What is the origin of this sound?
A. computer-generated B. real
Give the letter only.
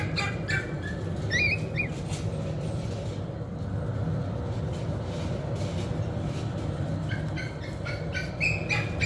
B